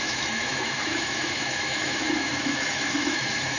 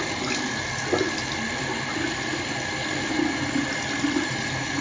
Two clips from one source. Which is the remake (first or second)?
first